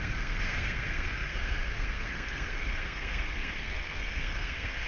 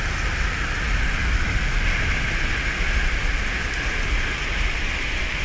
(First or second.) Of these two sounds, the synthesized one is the first